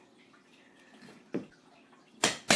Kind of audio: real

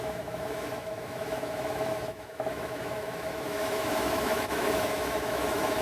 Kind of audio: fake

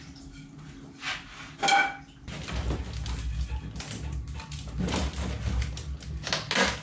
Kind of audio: real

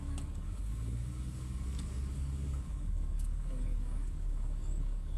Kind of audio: fake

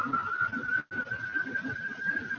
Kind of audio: real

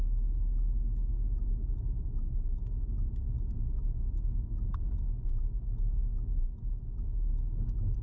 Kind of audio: real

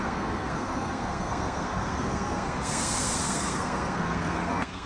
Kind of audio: fake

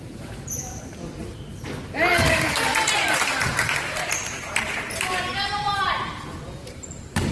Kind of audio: fake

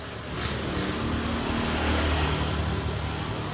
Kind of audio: real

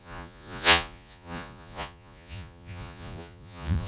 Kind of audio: fake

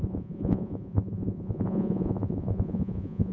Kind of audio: fake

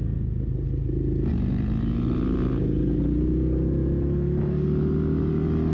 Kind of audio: real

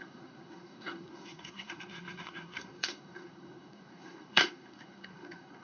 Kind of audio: fake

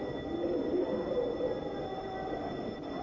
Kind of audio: real